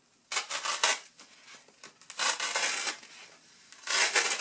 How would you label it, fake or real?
real